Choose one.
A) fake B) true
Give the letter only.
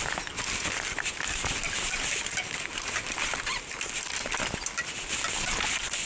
A